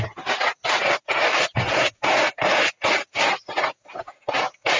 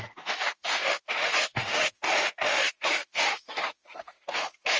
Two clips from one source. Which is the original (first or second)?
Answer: first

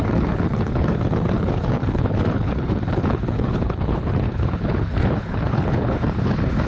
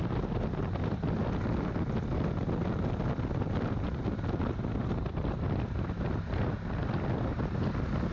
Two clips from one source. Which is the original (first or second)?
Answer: second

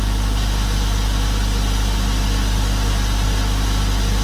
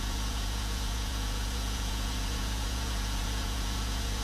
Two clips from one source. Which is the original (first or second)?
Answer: first